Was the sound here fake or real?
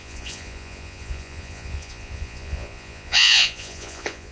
fake